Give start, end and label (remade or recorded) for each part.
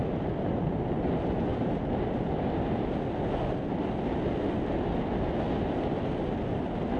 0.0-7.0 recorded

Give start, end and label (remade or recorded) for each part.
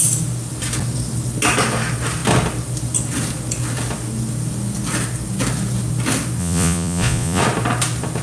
0.0-6.4 recorded; 6.4-7.4 remade; 7.4-8.2 recorded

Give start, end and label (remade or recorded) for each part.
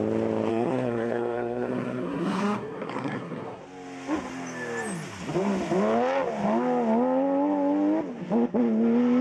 0.0-0.5 recorded; 0.5-3.6 remade; 3.6-9.2 recorded